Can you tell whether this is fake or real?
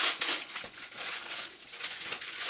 fake